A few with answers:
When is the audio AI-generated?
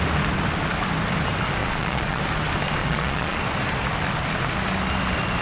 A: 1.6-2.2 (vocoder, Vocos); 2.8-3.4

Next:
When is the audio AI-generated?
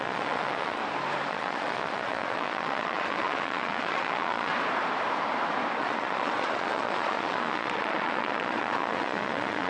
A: 0.0-0.8 (vocoder, Vocos); 1.3-4.5; 5.8-9.7